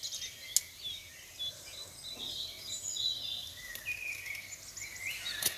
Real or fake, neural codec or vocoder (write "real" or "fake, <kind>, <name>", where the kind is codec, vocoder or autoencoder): real